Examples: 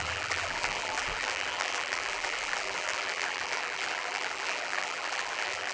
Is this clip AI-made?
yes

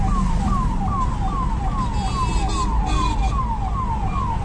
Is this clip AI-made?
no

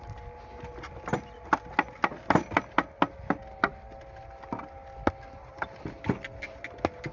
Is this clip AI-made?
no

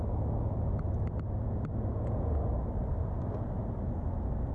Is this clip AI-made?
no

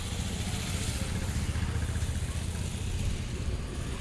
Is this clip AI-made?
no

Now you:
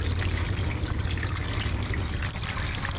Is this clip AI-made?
no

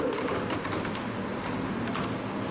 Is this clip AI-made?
no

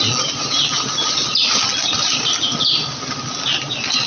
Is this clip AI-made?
no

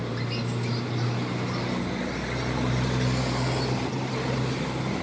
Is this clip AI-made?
no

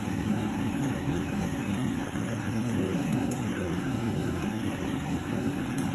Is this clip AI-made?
yes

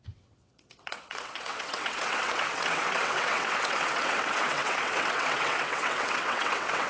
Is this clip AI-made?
yes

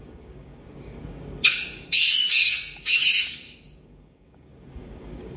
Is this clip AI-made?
yes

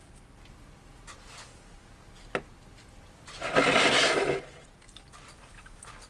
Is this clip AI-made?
no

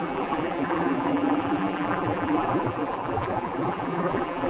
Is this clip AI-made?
yes